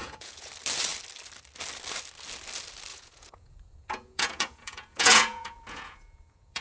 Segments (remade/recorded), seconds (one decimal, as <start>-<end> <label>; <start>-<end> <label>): 0.0-0.5 remade; 0.5-2.9 recorded; 2.9-6.6 remade